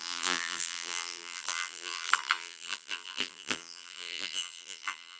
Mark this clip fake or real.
fake